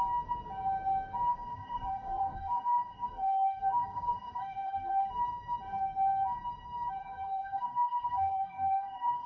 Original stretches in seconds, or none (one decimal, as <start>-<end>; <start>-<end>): 0.0-1.3; 5.1-7.0